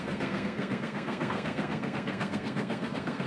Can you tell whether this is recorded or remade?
remade